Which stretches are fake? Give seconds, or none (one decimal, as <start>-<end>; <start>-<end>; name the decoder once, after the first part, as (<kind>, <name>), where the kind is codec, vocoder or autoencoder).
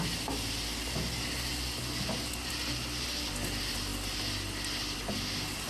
none